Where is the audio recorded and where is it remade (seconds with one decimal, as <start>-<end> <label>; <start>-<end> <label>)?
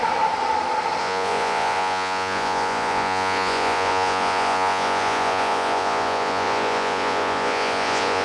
0.0-1.0 recorded; 1.0-8.2 remade